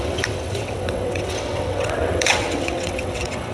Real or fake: fake